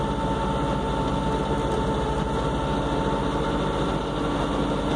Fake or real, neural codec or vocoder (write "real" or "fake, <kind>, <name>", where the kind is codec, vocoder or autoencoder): real